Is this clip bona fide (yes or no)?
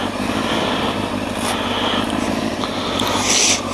yes